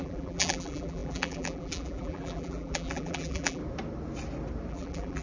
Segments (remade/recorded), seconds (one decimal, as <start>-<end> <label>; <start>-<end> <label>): 0.0-3.6 remade; 3.6-4.7 recorded; 4.7-5.2 remade